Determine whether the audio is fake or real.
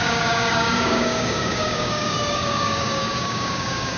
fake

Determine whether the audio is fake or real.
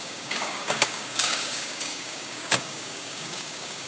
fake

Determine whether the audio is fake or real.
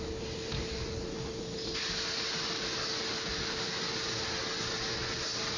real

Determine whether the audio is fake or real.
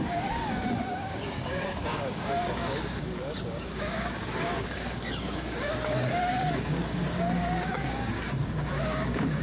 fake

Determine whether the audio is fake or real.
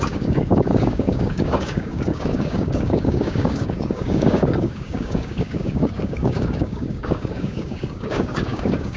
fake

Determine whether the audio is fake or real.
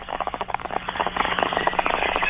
fake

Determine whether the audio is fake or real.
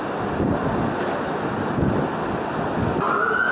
real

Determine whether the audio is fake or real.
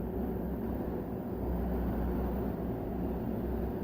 real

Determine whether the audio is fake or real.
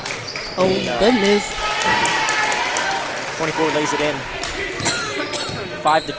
real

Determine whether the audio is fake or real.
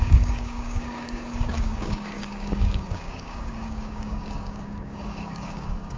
fake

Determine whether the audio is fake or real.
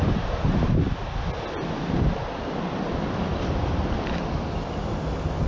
real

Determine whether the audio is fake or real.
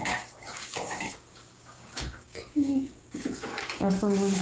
fake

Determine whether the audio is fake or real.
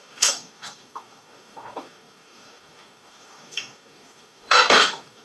fake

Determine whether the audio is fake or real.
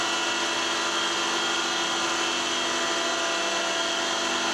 real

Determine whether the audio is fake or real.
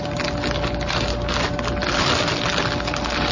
real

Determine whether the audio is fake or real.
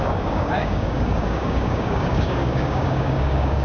fake